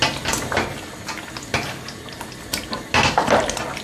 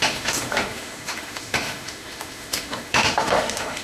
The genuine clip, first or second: first